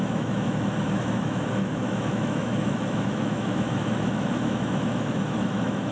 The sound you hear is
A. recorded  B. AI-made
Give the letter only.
B